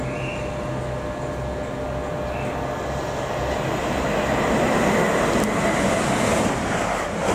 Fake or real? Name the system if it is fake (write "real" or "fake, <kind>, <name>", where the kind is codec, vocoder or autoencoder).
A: real